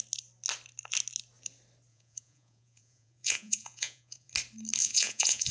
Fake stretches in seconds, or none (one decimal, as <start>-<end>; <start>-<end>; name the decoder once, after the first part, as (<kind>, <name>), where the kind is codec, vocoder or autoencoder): 1.9-4.3 (vocoder, Vocos); 4.8-5.5